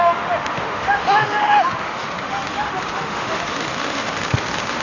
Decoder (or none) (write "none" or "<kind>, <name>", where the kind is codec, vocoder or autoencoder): autoencoder, DAC-VAE